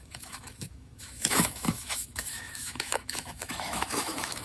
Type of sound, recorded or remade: remade